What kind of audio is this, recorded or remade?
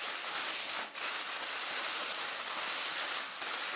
recorded